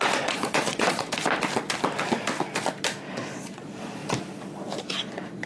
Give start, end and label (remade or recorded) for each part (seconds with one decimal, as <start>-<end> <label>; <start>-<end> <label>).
0.0-1.1 remade; 1.1-3.1 recorded; 3.1-4.0 remade; 4.0-4.8 recorded; 4.8-5.5 remade